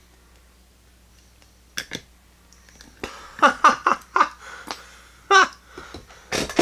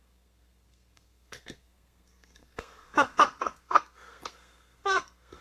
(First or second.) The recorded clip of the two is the first